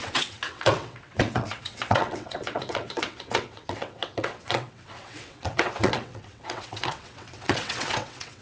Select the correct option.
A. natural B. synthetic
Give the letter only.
B